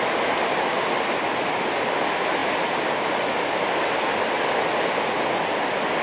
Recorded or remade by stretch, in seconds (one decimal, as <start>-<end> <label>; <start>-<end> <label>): 0.0-6.0 recorded